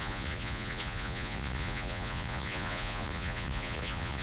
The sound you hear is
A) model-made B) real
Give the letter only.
A